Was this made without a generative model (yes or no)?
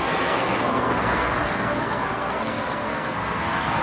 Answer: no